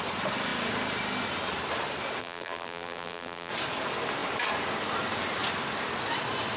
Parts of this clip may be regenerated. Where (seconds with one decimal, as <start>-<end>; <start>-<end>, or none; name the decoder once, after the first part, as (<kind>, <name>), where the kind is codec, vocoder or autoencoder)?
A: 2.2-3.5 (vocoder, BigVGAN v2)